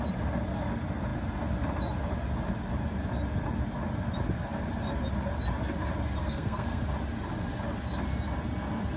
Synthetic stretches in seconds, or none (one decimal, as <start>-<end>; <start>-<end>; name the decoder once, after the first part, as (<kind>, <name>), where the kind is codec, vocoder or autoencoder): 6.2-6.8 (codec, SNAC)